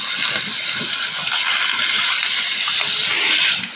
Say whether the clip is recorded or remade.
remade